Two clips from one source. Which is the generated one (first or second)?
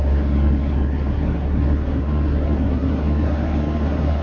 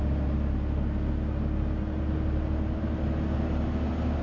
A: first